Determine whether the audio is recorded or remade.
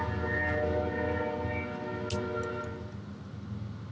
recorded